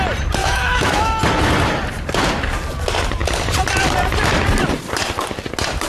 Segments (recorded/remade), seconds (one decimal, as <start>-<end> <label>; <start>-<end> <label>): 0.0-0.4 recorded; 0.4-1.2 remade; 1.2-5.9 recorded